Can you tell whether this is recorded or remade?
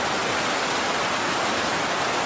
recorded